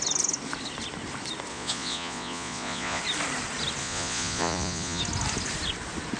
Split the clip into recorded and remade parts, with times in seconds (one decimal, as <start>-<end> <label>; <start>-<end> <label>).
0.0-1.5 recorded; 1.5-3.0 remade; 3.0-3.8 recorded; 3.8-5.0 remade; 5.0-6.2 recorded